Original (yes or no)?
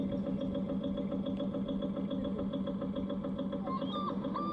yes